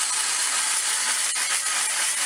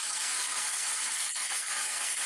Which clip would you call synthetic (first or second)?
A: second